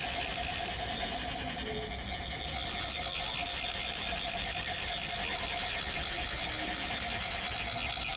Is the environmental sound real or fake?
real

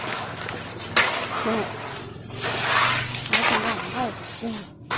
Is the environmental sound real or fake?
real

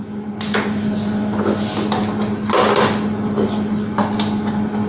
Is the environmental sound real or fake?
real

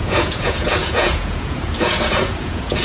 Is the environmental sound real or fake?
fake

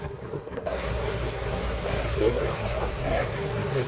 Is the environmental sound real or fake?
fake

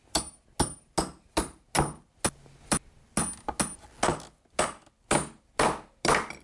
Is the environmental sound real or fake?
real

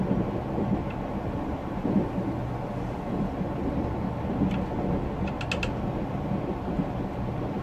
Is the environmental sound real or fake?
real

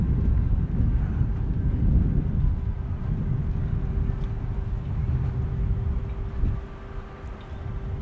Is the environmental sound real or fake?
real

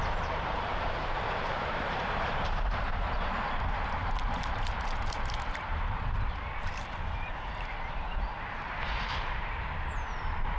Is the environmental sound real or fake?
fake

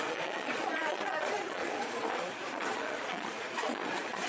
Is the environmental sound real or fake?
fake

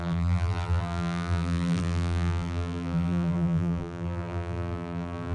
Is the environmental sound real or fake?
fake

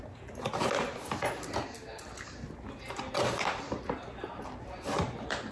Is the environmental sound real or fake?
real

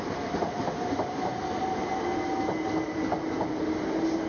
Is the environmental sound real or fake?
real